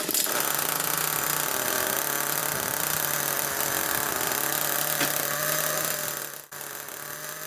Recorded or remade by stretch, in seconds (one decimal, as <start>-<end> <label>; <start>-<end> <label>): 0.0-7.5 recorded